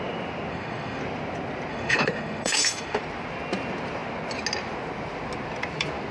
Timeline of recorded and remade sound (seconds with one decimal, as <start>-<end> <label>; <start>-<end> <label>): 0.0-0.5 recorded; 0.5-1.0 remade; 1.0-1.7 recorded; 1.7-3.0 remade; 3.0-6.1 recorded